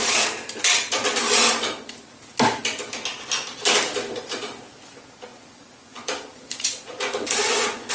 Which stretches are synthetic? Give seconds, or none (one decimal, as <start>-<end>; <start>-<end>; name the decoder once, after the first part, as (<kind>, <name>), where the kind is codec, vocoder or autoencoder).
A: 5.3-7.9 (vocoder, Vocos)